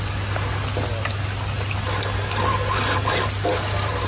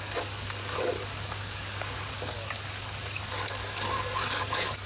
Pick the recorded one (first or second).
first